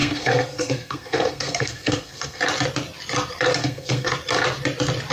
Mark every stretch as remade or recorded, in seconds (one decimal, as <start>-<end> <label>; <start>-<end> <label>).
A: 0.0-2.4 remade; 2.4-3.6 recorded; 3.6-4.1 remade; 4.1-5.1 recorded